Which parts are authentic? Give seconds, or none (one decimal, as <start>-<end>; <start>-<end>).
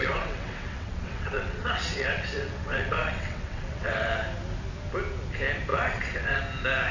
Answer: 4.1-5.7; 6.4-6.9